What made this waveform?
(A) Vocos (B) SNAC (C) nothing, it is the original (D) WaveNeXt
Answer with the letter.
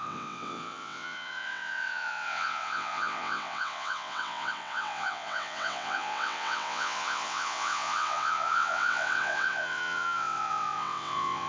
D